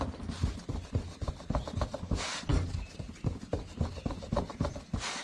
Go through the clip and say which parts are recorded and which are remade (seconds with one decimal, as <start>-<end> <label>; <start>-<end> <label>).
0.0-5.2 recorded

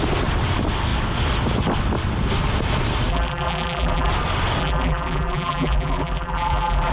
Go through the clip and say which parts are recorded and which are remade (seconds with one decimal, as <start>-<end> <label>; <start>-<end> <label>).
0.0-3.1 recorded; 3.1-4.1 remade; 4.1-4.6 recorded; 4.6-6.9 remade

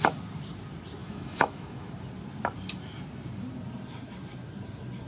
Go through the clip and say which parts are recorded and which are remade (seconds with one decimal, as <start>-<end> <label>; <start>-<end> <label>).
0.0-1.0 recorded; 1.0-1.9 remade; 1.9-5.1 recorded

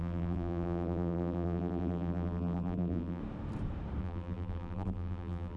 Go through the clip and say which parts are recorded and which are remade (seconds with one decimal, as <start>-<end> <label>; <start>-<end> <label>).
0.0-3.2 remade; 3.2-4.0 recorded; 4.0-5.6 remade

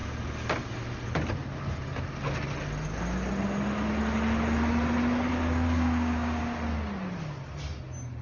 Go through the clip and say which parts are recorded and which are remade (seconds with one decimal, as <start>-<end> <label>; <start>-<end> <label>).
0.0-5.3 recorded; 5.3-6.4 remade; 6.4-8.2 recorded

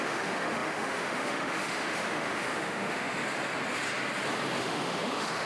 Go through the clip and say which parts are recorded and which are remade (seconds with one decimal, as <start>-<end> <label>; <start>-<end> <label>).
0.0-3.2 remade; 3.2-4.6 recorded; 4.6-5.5 remade

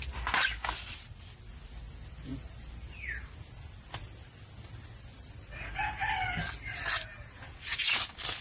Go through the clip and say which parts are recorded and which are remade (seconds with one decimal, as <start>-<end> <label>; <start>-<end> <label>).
0.0-8.4 recorded